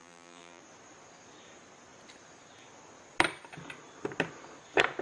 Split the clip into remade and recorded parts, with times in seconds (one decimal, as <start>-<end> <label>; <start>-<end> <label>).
0.0-0.6 remade; 0.6-5.0 recorded